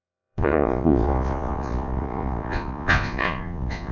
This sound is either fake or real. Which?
fake